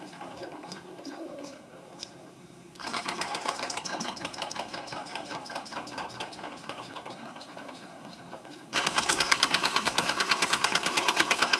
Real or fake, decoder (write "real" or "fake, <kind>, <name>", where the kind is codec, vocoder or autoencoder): fake, codec, SNAC